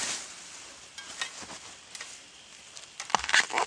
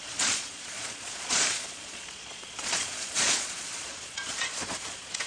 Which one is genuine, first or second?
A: first